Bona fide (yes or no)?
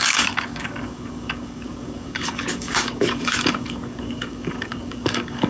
no